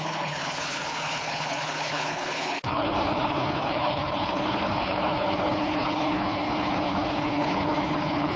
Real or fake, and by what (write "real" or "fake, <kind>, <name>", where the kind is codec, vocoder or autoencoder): fake, codec, HILCodec